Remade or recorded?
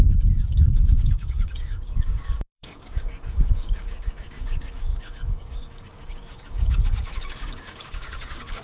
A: remade